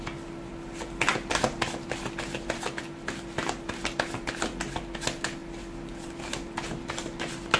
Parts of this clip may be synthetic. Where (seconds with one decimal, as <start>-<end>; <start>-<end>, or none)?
none